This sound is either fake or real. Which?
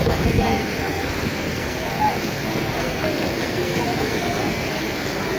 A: fake